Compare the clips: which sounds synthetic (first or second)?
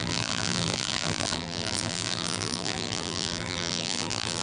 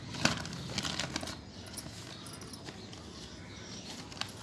first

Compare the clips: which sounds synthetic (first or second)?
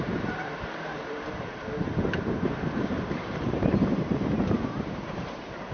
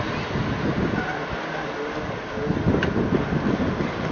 first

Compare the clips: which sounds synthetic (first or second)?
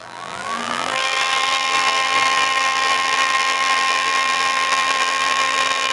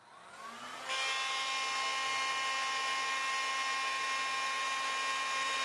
first